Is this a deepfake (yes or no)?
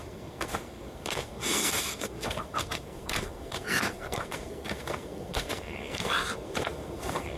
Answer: yes